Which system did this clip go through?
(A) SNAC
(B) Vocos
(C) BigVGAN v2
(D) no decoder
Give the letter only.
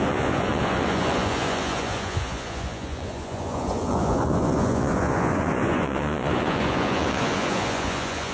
B